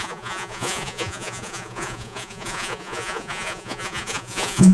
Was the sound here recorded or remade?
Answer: remade